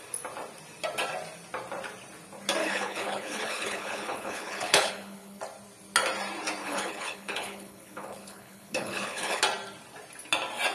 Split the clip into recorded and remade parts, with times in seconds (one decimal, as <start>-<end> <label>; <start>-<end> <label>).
0.0-2.6 recorded; 2.6-5.4 remade; 5.4-6.6 recorded; 6.6-9.4 remade; 9.4-10.7 recorded